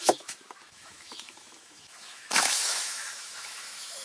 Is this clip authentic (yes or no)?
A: no